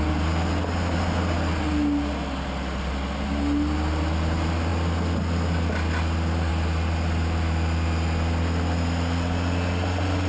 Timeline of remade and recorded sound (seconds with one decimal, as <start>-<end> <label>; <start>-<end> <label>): 0.0-10.3 recorded